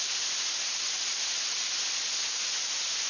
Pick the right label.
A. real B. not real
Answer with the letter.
A